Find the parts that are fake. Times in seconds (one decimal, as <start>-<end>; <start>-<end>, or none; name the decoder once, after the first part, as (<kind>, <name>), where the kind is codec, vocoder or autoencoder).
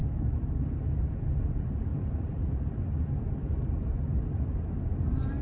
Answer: 1.9-5.4 (vocoder, BigVGAN v2)